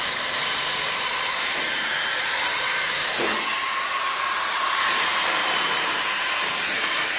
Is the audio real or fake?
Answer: fake